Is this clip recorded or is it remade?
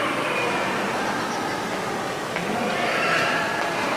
recorded